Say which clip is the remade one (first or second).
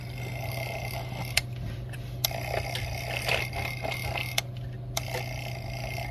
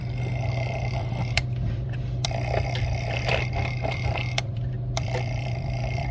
second